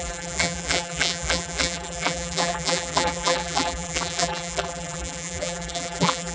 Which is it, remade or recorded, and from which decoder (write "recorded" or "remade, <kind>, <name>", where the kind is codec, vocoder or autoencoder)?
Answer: remade, vocoder, BigVGAN v2